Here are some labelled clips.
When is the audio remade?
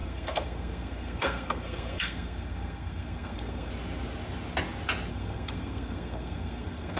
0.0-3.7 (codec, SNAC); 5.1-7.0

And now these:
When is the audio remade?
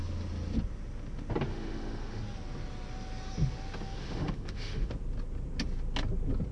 1.5-2.2 (autoencoder, DAC-VAE); 4.0-4.9